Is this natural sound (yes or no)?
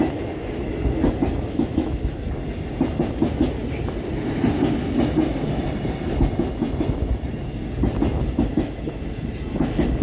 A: yes